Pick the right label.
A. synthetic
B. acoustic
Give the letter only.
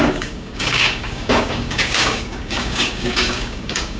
A